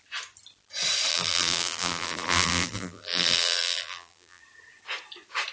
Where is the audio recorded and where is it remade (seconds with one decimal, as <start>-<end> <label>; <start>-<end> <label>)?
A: 0.0-1.1 recorded; 1.1-4.4 remade; 4.4-5.5 recorded